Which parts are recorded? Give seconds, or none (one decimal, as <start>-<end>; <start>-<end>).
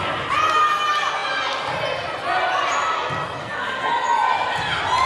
0.0-3.4; 3.9-5.1